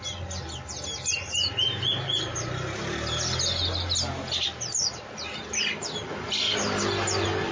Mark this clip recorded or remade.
recorded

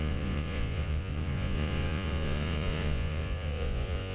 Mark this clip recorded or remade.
remade